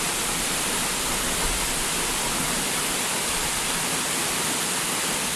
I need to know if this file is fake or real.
real